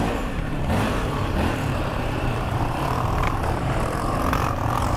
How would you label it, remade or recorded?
remade